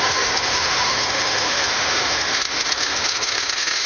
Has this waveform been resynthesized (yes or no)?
yes